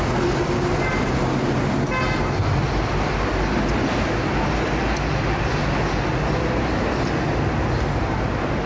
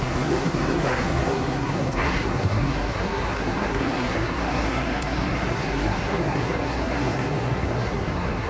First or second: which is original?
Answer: first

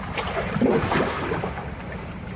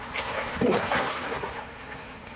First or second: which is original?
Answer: first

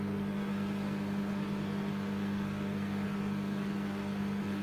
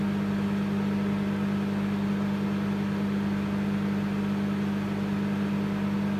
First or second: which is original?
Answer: second